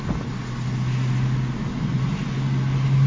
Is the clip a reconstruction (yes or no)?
no